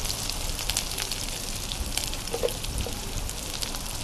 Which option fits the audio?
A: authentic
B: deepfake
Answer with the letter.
A